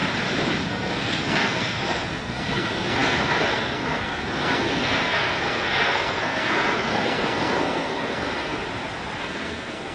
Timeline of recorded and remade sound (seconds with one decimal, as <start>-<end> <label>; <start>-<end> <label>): 0.0-0.7 recorded; 0.7-8.6 remade; 8.6-9.2 recorded; 9.2-9.9 remade